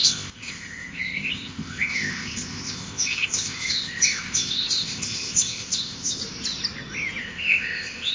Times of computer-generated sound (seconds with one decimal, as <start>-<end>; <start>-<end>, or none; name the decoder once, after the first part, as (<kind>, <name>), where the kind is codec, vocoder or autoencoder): 0.0-6.2 (codec, ZipCodec); 7.2-8.1